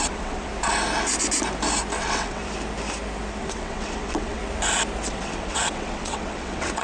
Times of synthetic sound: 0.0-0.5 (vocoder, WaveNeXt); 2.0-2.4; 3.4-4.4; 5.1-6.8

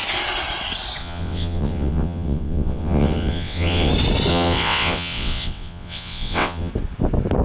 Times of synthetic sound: 1.0-3.9 (vocoder, WaveNeXt); 4.3-6.7